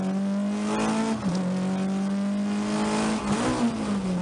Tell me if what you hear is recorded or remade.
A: recorded